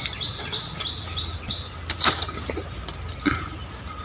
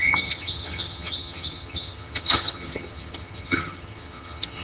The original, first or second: first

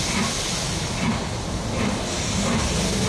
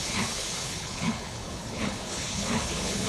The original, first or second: first